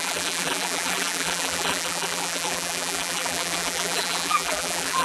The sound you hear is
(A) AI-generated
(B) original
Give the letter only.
A